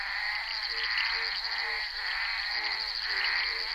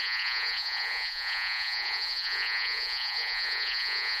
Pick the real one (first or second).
first